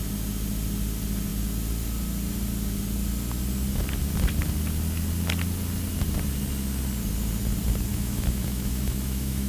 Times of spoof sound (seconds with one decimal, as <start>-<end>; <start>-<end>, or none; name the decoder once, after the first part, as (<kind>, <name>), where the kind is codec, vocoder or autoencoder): 7.9-9.5 (autoencoder, DAC-VAE)